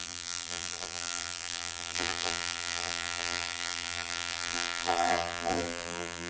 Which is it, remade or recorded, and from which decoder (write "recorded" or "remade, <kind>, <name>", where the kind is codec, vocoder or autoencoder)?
remade, vocoder, BigVGAN v2